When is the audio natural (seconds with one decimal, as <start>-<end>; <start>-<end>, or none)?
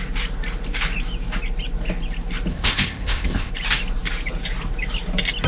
0.0-2.5; 3.5-5.5